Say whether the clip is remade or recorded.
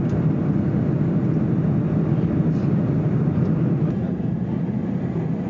recorded